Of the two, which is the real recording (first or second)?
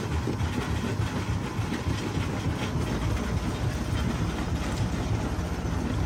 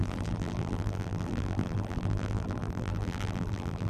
first